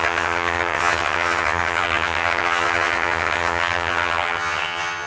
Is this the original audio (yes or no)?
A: no